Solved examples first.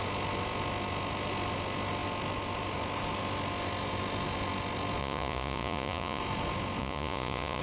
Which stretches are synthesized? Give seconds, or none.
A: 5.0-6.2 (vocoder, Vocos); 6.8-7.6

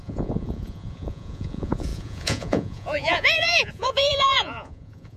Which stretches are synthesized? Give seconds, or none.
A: 0.0-5.2 (vocoder, Vocos)

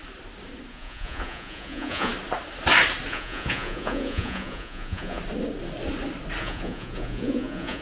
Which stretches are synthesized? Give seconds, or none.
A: 0.7-2.1 (vocoder, Vocos); 3.1-5.2; 6.4-7.8

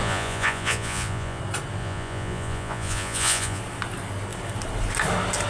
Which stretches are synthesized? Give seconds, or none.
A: 0.0-1.4 (vocoder, Vocos); 1.8-3.6

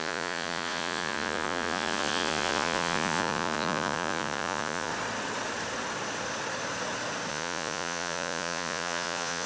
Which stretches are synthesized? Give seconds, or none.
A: 0.0-4.9 (vocoder, Vocos); 7.3-9.5

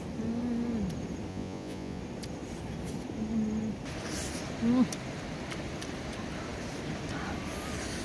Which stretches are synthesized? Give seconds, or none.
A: 1.3-2.0 (vocoder, Vocos)

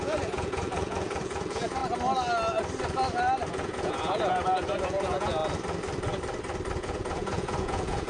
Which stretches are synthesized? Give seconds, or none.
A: 0.0-1.8 (vocoder, Vocos); 3.5-5.4; 6.8-8.1

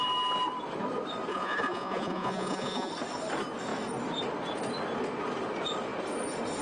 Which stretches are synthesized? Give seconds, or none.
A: 1.3-2.9 (vocoder, Vocos)